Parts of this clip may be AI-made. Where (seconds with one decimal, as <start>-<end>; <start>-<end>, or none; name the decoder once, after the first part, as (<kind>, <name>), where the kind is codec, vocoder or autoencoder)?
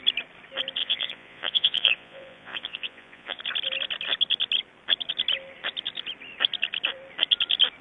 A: 0.8-3.4 (vocoder, Vocos)